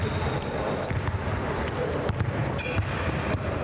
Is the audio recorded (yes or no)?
yes